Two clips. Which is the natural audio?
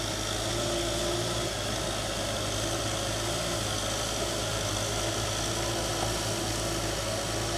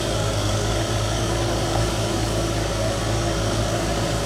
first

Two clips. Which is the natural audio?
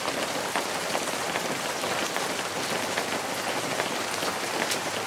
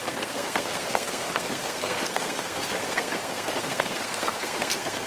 first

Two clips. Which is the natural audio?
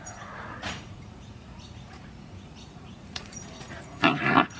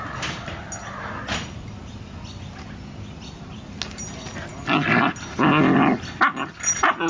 second